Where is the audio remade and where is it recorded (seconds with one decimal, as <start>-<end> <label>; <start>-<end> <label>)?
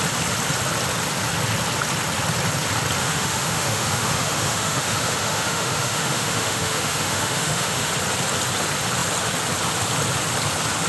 0.0-3.0 recorded; 3.0-7.9 remade; 7.9-10.9 recorded